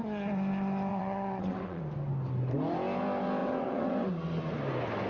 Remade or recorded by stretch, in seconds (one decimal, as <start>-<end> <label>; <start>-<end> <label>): 0.0-0.9 recorded; 0.9-1.8 remade; 1.8-3.4 recorded; 3.4-4.1 remade; 4.1-5.1 recorded